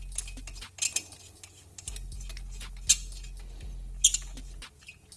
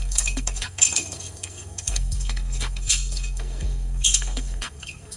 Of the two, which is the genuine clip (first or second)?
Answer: first